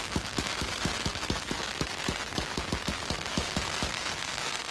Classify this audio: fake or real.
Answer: fake